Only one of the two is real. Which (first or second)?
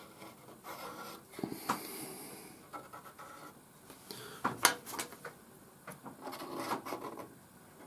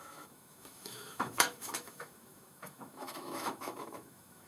first